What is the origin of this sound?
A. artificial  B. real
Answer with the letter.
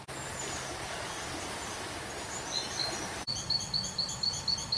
B